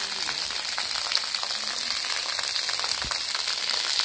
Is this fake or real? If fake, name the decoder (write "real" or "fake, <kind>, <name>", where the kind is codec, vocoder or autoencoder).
real